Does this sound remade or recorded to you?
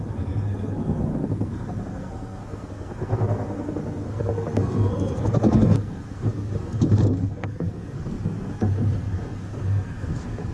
remade